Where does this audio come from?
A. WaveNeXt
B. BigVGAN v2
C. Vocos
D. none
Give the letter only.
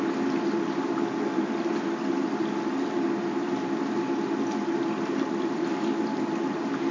B